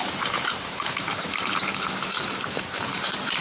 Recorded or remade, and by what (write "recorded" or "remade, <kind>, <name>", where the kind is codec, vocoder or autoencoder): remade, vocoder, BigVGAN v2